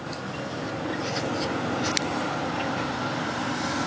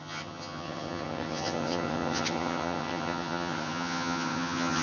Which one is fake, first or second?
second